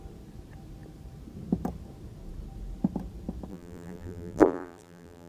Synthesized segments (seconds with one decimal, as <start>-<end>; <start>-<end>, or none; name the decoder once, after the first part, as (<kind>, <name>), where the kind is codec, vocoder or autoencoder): 3.5-5.3 (vocoder, BigVGAN v2)